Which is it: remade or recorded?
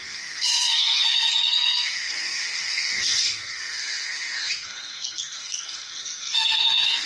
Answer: remade